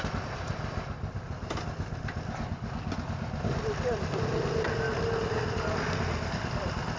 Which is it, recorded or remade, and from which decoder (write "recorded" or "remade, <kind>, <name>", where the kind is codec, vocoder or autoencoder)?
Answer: recorded